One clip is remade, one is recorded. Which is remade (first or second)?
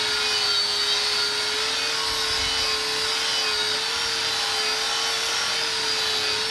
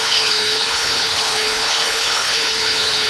second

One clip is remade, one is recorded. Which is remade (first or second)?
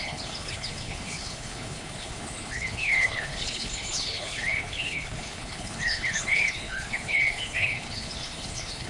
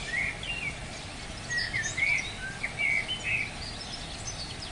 first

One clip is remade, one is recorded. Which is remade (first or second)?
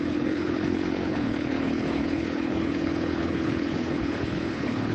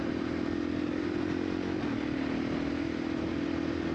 first